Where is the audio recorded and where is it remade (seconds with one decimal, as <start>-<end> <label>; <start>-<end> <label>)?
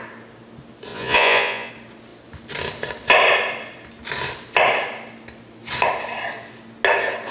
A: 0.0-0.9 recorded; 0.9-1.7 remade; 1.7-7.3 recorded